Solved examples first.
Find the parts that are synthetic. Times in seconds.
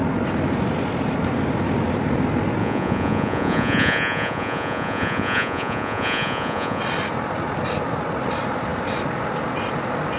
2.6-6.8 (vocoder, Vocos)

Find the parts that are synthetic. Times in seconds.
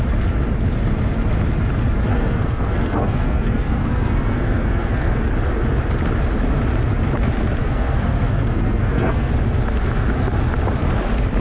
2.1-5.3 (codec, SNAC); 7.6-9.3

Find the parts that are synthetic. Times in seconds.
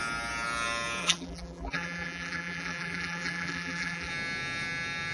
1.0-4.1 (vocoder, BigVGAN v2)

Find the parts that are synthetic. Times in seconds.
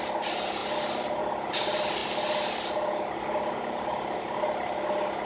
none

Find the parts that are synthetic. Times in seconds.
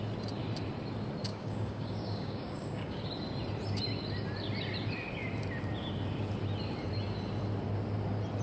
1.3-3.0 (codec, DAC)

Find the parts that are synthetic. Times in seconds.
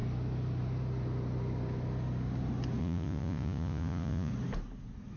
2.8-4.3 (vocoder, Vocos)